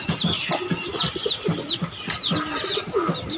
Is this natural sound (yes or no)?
yes